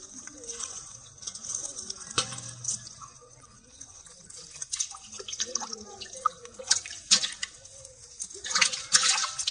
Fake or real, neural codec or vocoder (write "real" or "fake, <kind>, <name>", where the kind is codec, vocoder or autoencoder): fake, vocoder, Vocos